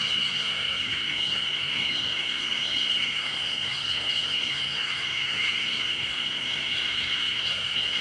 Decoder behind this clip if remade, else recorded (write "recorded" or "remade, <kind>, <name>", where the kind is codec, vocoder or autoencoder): remade, codec, SNAC